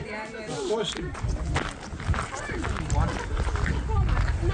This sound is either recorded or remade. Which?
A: recorded